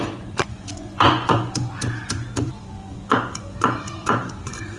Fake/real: fake